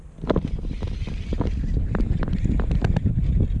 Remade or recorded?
recorded